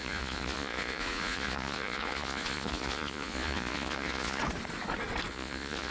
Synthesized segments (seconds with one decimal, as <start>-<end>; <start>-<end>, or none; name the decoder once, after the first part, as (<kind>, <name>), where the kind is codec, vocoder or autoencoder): 0.0-4.4 (vocoder, Vocos); 5.3-5.9